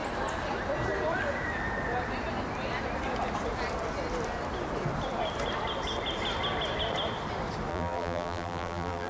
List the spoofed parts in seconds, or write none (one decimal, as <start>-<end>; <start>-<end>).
7.7-9.1